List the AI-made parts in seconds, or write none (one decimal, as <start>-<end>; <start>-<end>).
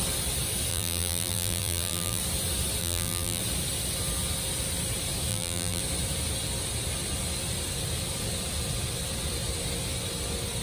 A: 0.7-2.2; 2.8-3.4; 5.3-5.8